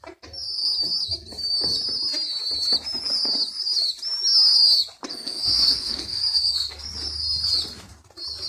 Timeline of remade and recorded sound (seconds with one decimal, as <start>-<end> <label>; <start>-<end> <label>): 0.0-5.1 recorded; 5.1-6.9 remade; 6.9-8.5 recorded